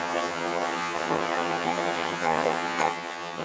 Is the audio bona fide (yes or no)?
no